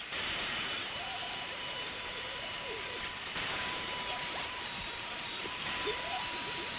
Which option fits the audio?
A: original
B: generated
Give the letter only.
B